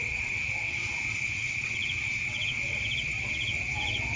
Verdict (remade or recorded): remade